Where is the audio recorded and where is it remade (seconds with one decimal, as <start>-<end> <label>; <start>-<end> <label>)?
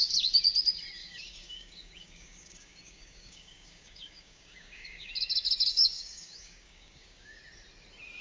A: 0.0-1.0 recorded; 1.0-5.1 remade; 5.1-5.7 recorded; 5.7-7.4 remade; 7.4-8.2 recorded